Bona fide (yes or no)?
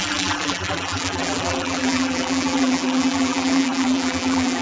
no